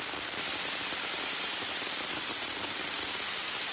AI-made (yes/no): no